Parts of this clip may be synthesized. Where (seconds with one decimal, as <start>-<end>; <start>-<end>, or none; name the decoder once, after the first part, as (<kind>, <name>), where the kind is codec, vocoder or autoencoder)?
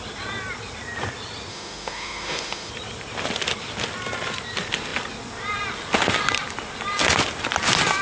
1.5-2.7 (autoencoder, DAC-VAE)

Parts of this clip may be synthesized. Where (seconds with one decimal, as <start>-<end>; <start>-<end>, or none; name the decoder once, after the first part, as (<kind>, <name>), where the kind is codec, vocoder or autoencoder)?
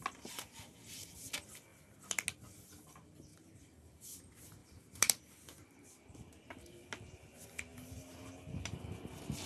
3.3-4.0 (vocoder, BigVGAN v2); 4.6-5.2